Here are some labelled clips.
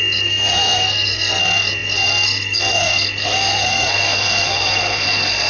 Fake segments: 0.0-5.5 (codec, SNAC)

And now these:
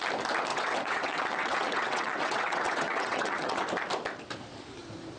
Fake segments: 0.5-3.6 (vocoder, WaveNeXt)

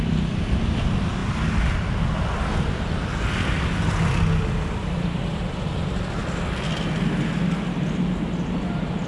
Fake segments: none

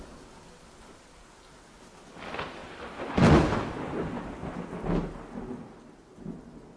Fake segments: none